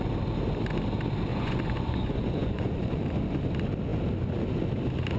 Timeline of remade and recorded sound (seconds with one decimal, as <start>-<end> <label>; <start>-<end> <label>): 0.0-1.3 recorded; 1.3-3.0 remade; 3.0-5.2 recorded